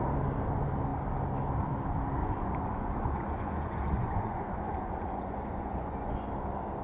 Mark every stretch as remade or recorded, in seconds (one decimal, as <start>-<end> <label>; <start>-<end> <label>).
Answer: 0.0-2.2 recorded; 2.2-6.3 remade; 6.3-6.8 recorded